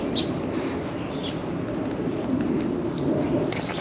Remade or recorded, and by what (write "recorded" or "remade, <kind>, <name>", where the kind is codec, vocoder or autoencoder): recorded